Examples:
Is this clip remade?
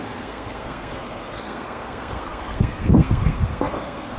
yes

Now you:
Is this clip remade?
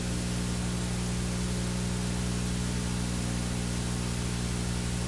no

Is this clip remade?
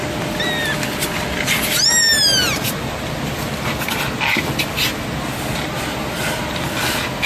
no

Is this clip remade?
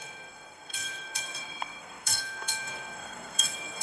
yes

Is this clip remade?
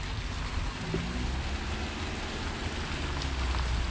no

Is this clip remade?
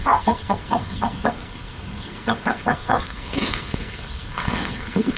yes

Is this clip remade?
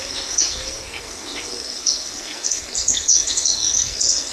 yes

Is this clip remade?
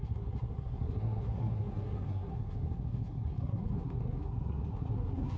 yes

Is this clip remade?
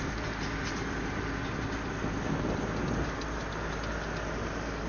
no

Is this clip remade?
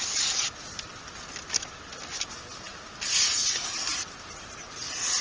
no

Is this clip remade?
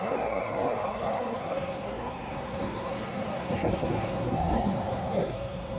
yes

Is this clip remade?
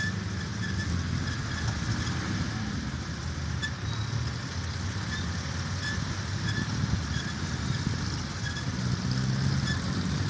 no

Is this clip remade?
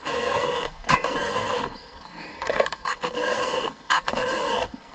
yes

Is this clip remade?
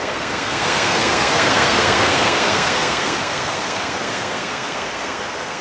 yes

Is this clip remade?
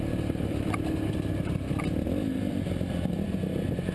no